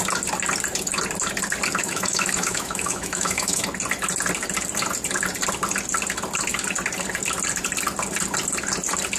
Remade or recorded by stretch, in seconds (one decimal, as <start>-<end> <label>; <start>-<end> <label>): 0.0-1.8 recorded; 1.8-3.6 remade; 3.6-9.2 recorded